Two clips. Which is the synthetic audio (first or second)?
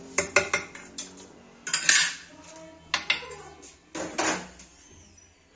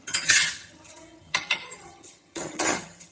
second